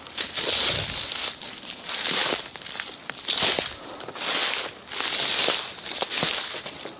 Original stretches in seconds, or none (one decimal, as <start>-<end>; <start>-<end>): 0.0-7.0